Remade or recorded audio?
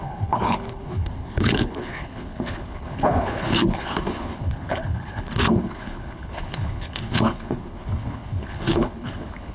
remade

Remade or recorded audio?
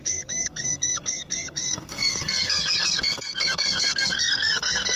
remade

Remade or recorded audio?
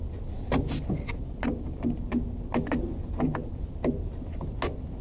recorded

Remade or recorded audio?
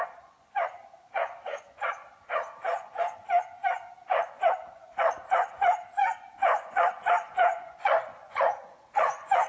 remade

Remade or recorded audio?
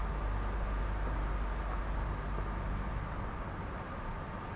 recorded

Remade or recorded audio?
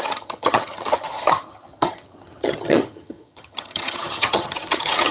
remade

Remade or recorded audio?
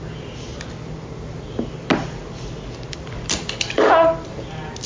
recorded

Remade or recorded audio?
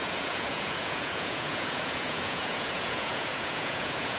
remade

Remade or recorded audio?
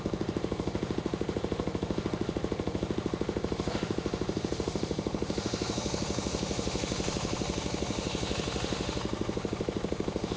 remade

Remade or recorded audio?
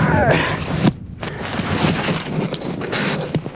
remade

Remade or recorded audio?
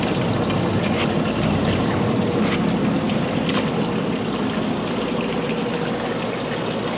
recorded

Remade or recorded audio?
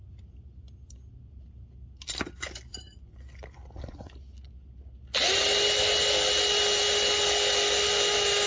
recorded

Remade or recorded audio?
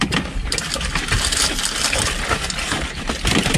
recorded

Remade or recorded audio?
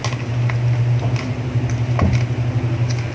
recorded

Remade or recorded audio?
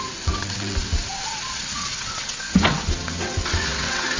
remade